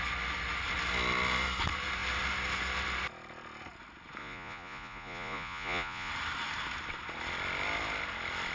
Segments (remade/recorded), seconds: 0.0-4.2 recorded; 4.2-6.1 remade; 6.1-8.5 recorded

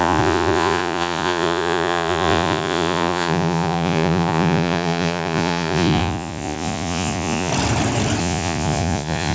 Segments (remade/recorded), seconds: 0.0-7.5 remade; 7.5-8.2 recorded; 8.2-9.3 remade

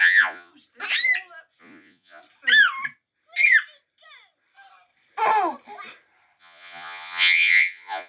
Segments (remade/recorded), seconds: 0.0-0.5 remade; 0.5-1.6 recorded; 1.6-2.2 remade; 2.2-6.4 recorded; 6.4-8.1 remade

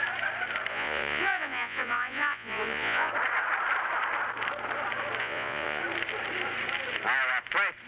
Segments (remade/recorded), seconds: 0.0-0.7 recorded; 0.7-3.1 remade; 3.1-5.2 recorded; 5.2-5.8 remade; 5.8-7.9 recorded

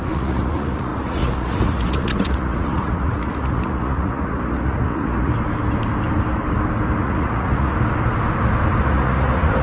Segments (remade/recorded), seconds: 0.0-5.3 remade; 5.3-7.0 recorded; 7.0-7.7 remade; 7.7-8.8 recorded; 8.8-9.6 remade

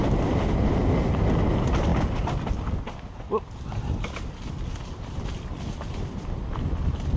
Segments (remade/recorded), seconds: 0.0-7.2 recorded

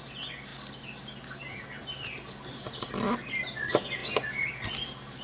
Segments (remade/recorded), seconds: 0.0-5.2 recorded

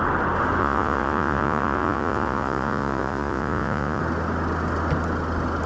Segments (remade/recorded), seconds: 0.0-0.6 recorded; 0.6-4.0 remade; 4.0-5.7 recorded